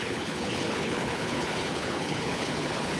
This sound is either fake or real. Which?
fake